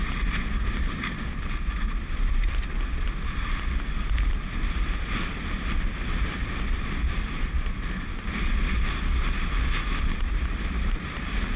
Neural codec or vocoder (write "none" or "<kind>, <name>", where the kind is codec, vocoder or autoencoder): none